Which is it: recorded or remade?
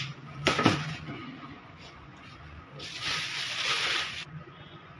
remade